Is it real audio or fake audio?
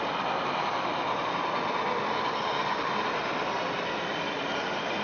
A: real